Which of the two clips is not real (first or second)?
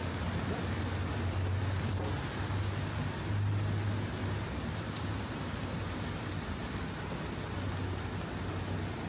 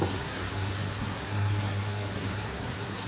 second